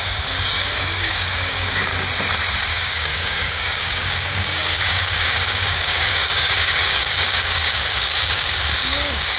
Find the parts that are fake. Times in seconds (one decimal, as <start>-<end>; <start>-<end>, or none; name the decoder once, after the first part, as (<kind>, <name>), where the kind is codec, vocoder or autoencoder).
0.0-1.9 (codec, DAC); 2.5-9.4